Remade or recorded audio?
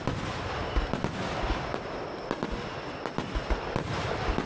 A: recorded